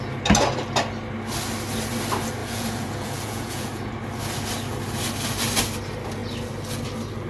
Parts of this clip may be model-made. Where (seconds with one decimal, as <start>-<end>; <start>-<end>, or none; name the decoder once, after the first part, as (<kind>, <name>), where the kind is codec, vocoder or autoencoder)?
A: 2.4-3.9 (vocoder, Vocos)